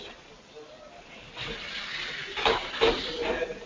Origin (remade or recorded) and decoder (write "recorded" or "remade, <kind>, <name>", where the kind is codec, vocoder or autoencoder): recorded